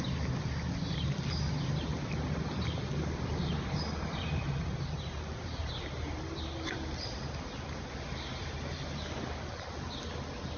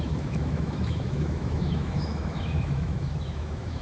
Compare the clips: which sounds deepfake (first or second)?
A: second